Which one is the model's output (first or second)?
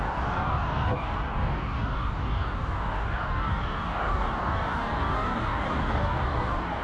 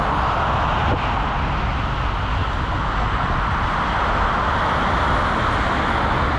first